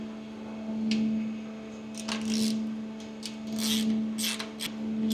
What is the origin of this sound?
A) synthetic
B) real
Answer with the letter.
B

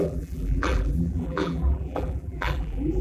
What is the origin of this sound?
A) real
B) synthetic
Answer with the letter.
B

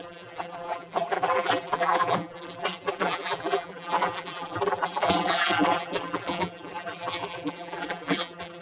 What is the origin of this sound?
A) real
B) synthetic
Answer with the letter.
B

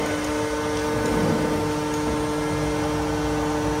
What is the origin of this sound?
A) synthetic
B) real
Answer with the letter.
B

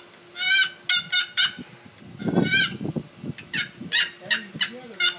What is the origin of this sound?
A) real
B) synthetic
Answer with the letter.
A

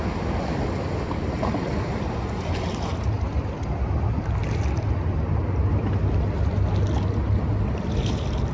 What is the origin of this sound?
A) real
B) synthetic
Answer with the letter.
A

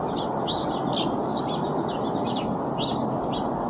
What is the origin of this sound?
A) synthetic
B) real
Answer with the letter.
B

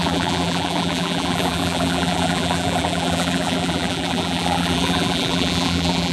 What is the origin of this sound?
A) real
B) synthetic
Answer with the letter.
B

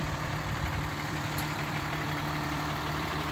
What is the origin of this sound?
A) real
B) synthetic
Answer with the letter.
B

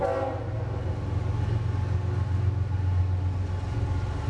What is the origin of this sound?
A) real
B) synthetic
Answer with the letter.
A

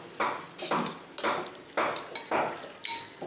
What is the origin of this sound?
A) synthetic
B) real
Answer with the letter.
B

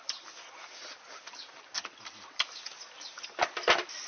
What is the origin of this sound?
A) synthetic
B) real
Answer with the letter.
B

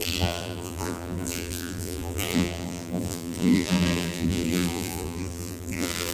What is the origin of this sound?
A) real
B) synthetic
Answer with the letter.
B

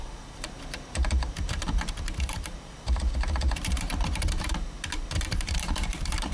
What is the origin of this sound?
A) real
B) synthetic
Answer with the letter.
B